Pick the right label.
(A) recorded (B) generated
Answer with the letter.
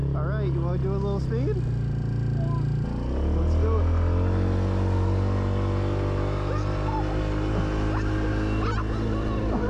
A